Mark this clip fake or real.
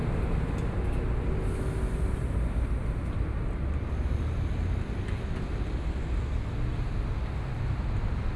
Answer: real